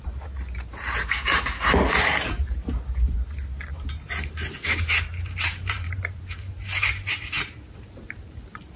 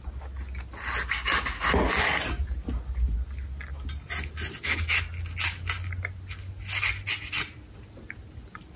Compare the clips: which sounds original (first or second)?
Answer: second